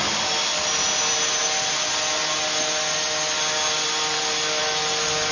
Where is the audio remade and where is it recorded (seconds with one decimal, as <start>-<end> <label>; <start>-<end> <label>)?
0.0-5.3 recorded